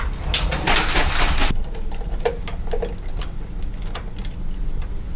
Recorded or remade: recorded